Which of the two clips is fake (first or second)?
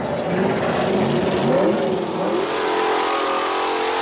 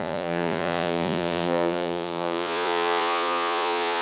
second